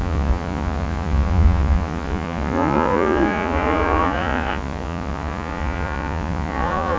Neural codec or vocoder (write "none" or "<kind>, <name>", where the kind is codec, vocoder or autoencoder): vocoder, Vocos